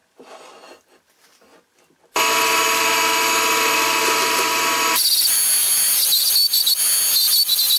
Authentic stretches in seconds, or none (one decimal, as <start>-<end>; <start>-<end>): 0.0-7.8